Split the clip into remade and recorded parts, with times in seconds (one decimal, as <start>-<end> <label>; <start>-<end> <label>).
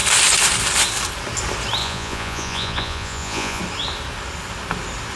0.0-1.8 recorded; 1.8-3.6 remade; 3.6-5.2 recorded